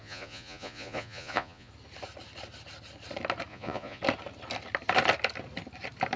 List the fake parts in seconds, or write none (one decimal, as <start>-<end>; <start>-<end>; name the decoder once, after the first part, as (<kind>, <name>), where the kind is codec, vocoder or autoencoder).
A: 0.0-1.7 (vocoder, Vocos); 3.5-4.0